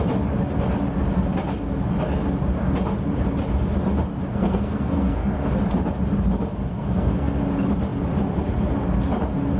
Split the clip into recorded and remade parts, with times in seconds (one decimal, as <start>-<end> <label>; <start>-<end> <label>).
0.0-4.3 recorded; 4.3-5.5 remade; 5.5-6.7 recorded; 6.7-7.4 remade; 7.4-9.6 recorded